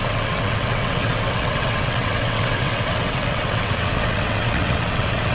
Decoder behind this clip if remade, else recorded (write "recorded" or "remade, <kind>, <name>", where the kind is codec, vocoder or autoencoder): remade, vocoder, WaveNeXt